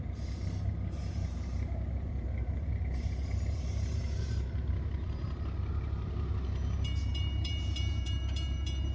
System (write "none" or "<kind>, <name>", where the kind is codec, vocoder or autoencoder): vocoder, BigVGAN v2